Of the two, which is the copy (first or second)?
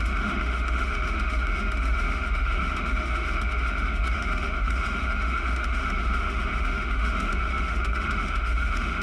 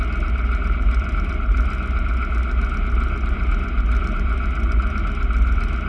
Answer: first